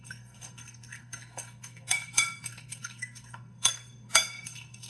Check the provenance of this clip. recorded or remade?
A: remade